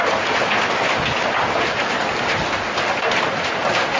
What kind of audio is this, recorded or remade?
recorded